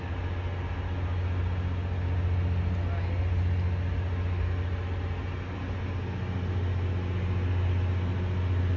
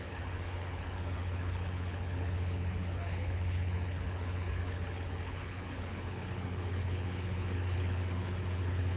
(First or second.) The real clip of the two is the first